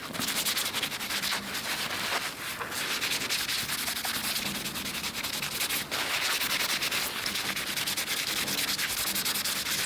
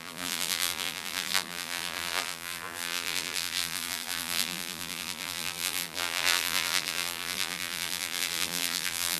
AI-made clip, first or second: second